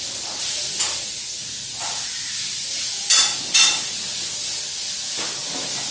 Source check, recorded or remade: recorded